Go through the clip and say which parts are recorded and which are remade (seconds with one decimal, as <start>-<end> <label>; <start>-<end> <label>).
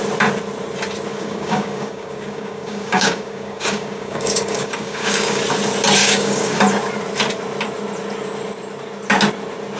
0.0-1.1 recorded; 1.1-5.4 remade; 5.4-6.0 recorded; 6.0-6.6 remade; 6.6-9.8 recorded